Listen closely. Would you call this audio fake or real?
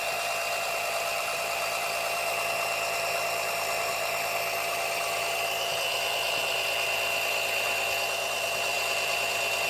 fake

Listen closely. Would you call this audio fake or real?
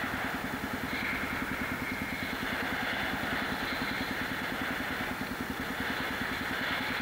real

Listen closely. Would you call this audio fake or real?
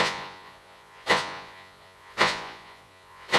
fake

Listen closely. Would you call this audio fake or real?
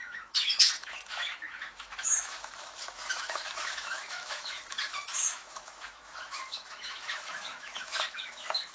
fake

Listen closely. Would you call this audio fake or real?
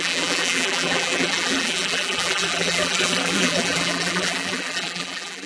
fake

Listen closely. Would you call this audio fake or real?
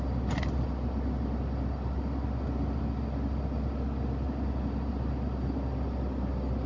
real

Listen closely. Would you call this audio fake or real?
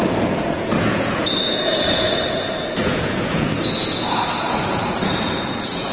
fake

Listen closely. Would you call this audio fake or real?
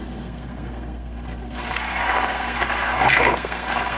fake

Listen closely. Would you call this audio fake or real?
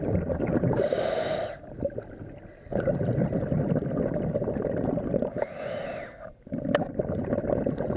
real